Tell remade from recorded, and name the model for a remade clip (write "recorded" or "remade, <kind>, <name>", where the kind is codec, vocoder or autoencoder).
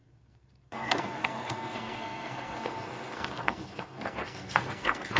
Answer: remade, codec, SNAC